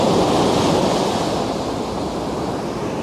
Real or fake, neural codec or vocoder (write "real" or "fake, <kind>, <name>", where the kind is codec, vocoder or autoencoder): real